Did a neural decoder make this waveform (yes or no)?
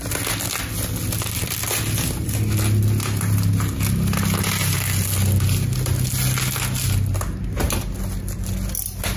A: no